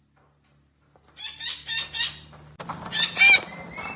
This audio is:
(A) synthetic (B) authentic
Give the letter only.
B